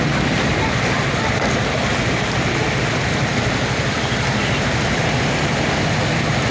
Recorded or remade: recorded